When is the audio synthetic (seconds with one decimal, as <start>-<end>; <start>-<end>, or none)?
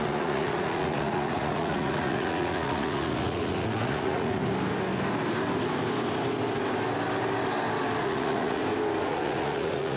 0.0-4.4; 8.0-8.6; 9.1-10.0